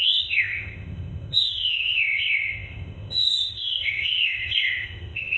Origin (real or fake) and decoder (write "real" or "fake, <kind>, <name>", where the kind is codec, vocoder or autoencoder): fake, codec, ZipCodec